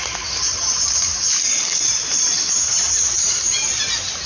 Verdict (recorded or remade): recorded